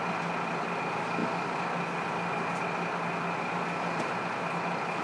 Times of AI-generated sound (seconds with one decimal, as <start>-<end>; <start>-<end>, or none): none